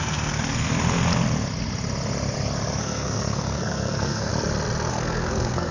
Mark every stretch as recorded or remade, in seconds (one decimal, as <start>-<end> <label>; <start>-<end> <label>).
0.0-0.7 remade; 0.7-2.8 recorded; 2.8-4.3 remade; 4.3-4.9 recorded; 4.9-5.7 remade